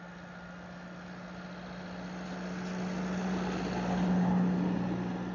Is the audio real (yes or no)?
yes